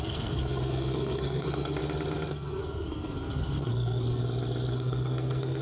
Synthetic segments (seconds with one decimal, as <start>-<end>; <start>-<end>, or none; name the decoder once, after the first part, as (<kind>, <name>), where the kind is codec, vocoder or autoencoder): 0.0-1.8 (codec, SNAC); 2.3-4.2; 4.7-5.6